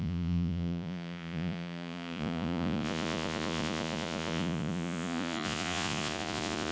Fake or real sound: fake